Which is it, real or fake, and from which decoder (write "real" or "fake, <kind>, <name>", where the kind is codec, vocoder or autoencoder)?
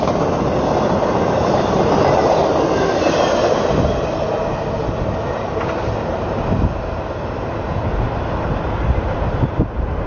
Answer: real